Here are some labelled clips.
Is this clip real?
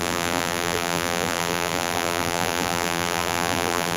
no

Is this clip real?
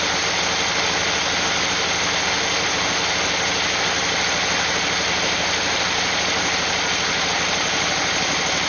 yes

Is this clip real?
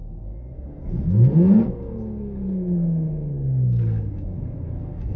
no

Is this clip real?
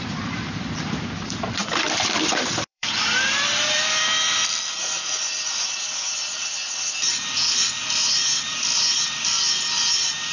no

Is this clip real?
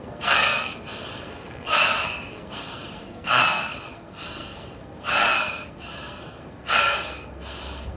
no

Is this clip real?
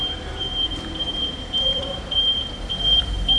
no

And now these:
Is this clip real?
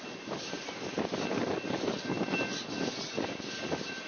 yes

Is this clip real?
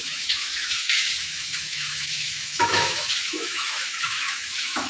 no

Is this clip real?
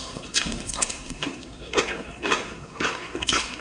no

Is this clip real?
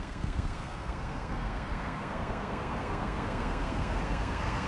no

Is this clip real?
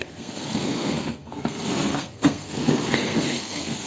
no